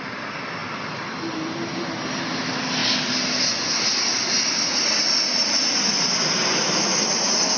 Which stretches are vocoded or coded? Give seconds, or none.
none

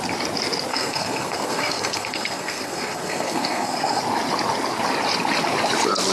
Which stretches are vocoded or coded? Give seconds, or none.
0.7-4.0 (codec, SNAC)

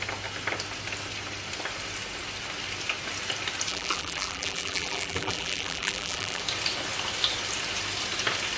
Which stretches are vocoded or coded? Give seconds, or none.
3.7-6.4 (vocoder, BigVGAN v2)

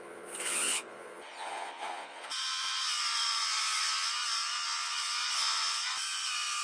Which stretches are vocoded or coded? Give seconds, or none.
0.0-6.6 (vocoder, Vocos)